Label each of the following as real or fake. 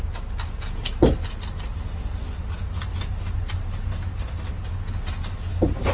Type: real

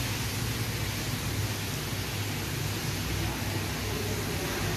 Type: real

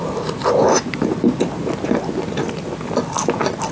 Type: real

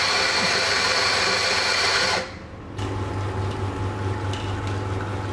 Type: real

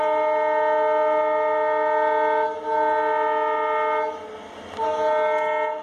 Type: real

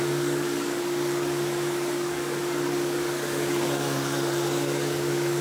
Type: fake